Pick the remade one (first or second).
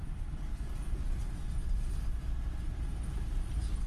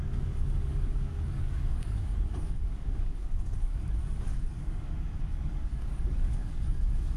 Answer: second